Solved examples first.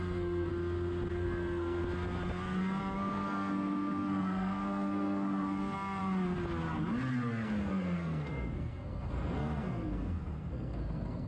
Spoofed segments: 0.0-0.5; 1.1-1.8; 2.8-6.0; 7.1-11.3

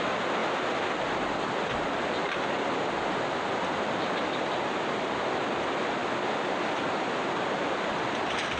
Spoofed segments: none

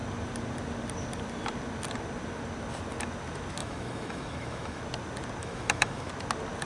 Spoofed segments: 3.6-4.8; 5.4-6.1

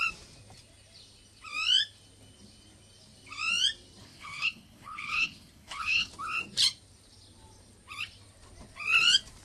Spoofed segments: 4.0-6.1